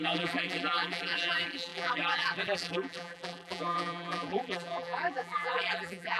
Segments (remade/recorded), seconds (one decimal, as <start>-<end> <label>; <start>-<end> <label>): 0.0-6.2 remade